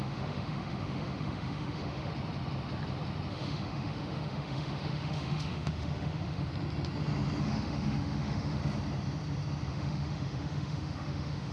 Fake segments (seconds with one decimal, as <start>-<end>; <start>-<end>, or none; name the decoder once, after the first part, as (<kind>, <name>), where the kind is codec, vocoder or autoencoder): 0.0-2.1 (autoencoder, DAC-VAE); 3.3-6.5; 7.4-8.6; 9.7-11.5